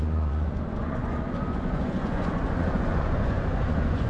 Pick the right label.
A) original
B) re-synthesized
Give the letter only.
B